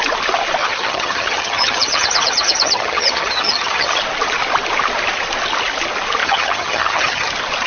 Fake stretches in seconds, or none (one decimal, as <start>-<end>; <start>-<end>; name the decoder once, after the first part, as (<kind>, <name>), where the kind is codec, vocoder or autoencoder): 0.6-4.0 (vocoder, HiFi-GAN); 6.2-7.3

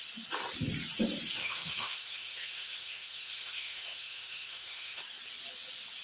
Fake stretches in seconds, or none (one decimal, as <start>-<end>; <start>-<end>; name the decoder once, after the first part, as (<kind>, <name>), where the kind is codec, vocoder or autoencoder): 1.4-5.0 (autoencoder, DAC-VAE)

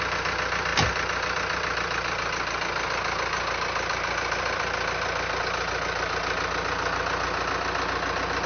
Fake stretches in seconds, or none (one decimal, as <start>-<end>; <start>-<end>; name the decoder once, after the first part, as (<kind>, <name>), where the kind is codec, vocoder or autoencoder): none

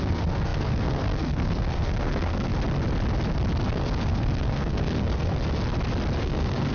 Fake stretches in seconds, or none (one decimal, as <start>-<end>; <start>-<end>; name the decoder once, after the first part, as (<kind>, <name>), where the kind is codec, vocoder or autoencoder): 0.0-2.5 (codec, SNAC); 3.7-5.3; 6.2-6.7

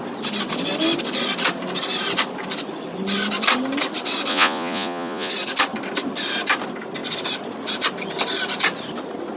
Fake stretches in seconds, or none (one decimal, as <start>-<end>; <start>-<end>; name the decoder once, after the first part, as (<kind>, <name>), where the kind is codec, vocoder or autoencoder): 4.3-5.3 (vocoder, Vocos)

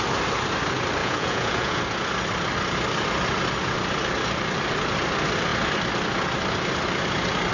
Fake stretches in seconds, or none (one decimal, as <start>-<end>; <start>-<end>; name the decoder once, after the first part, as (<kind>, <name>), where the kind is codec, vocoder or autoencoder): 1.0-1.8 (vocoder, Vocos)

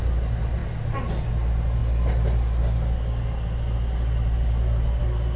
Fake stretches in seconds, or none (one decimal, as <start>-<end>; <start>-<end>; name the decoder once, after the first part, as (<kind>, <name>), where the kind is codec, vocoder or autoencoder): none